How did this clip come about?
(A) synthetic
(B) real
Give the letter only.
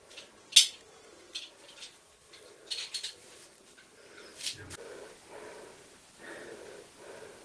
B